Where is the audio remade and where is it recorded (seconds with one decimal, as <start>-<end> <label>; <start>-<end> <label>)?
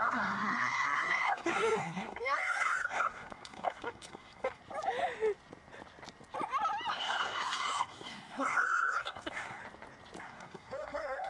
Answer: 0.0-4.6 remade; 4.6-6.9 recorded; 6.9-9.6 remade; 9.6-10.2 recorded; 10.2-11.3 remade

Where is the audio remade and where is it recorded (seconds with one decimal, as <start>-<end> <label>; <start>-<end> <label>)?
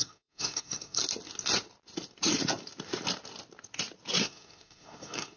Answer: 0.0-1.0 remade; 1.0-4.2 recorded; 4.2-5.4 remade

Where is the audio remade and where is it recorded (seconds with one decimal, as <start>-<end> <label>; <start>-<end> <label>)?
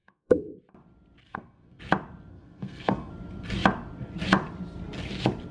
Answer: 0.0-0.6 remade; 0.6-1.2 recorded; 1.2-1.8 remade; 1.8-2.3 recorded; 2.3-3.1 remade; 3.1-5.5 recorded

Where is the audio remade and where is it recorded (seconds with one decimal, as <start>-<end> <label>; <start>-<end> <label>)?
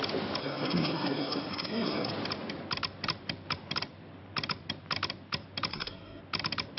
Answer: 0.0-0.4 recorded; 0.4-2.1 remade; 2.1-5.7 recorded; 5.7-6.2 remade; 6.2-6.8 recorded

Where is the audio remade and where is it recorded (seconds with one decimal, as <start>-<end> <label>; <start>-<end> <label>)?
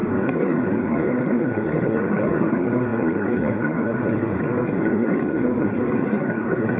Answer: 0.0-6.8 remade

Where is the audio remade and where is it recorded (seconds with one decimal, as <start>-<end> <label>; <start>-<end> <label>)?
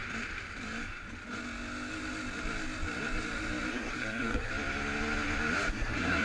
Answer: 0.0-3.7 recorded; 3.7-4.5 remade; 4.5-5.7 recorded; 5.7-6.2 remade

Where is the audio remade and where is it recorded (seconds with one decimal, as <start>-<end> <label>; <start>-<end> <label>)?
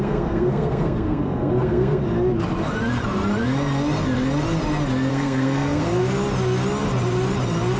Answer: 0.0-2.0 remade; 2.0-5.1 recorded; 5.1-6.0 remade; 6.0-7.8 recorded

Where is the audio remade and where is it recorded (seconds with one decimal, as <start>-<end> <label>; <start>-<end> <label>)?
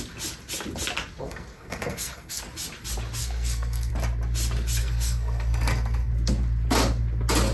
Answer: 0.0-1.2 recorded; 1.2-2.4 remade; 2.4-3.2 recorded; 3.2-3.9 remade; 3.9-4.8 recorded; 4.8-6.1 remade; 6.1-7.5 recorded